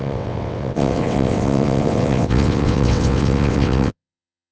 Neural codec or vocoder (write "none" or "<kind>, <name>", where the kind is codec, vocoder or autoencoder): vocoder, WaveNeXt